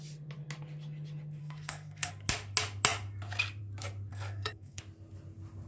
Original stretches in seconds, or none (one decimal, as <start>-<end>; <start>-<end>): 0.0-1.4; 2.1-4.1; 4.8-5.7